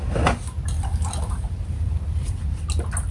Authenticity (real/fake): real